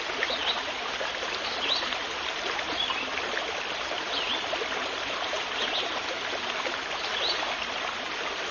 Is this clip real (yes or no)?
yes